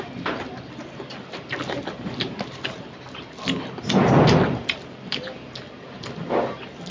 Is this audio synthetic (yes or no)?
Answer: no